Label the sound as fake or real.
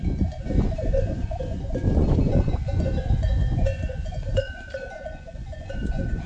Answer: fake